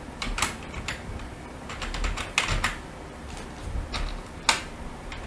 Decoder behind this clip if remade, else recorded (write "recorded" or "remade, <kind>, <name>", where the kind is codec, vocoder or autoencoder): recorded